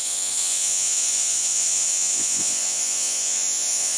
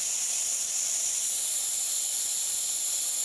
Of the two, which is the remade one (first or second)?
first